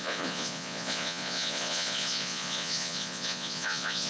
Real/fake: fake